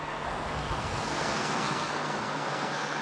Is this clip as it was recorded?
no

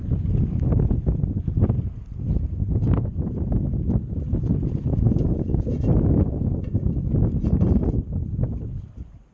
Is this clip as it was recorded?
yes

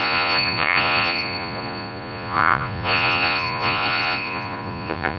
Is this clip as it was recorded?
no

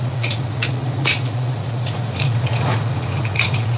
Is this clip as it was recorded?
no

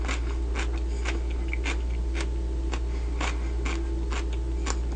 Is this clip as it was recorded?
yes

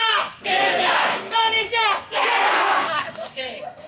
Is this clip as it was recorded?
no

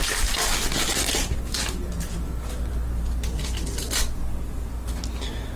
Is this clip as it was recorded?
yes